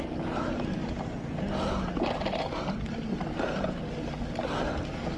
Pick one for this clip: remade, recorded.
recorded